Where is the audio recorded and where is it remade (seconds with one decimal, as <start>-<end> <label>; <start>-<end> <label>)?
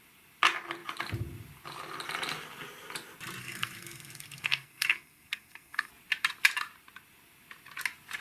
0.0-3.4 recorded; 3.4-5.9 remade; 5.9-8.2 recorded